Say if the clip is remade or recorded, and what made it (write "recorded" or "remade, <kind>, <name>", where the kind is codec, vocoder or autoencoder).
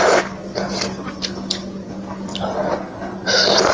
recorded